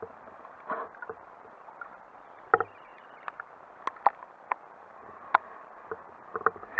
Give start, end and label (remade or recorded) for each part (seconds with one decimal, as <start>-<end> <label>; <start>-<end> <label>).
0.0-6.8 recorded